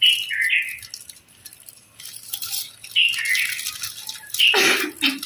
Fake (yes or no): no